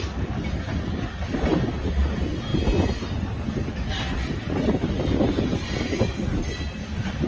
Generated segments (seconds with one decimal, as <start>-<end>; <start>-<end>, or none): none